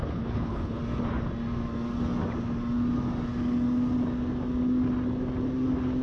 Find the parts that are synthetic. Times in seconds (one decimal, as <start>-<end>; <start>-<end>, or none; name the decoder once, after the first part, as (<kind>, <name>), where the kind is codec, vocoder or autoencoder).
0.0-0.8 (codec, HILCodec)